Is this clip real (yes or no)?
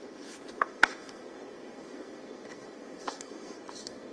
no